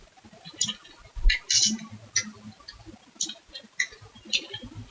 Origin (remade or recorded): recorded